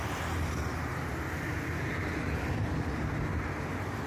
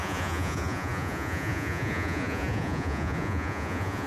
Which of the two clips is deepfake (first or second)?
second